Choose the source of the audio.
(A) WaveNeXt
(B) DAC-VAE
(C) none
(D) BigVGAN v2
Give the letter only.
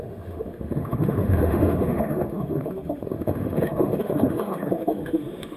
B